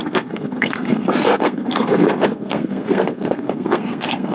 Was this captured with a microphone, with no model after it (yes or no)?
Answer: no